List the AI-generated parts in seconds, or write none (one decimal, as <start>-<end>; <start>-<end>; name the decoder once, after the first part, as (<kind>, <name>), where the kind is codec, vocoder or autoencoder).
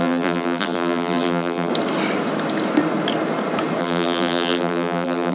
0.0-1.7 (vocoder, BigVGAN v2); 3.8-5.3